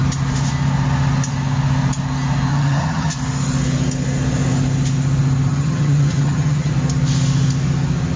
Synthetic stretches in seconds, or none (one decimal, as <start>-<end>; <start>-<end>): 2.5-3.1; 5.5-6.7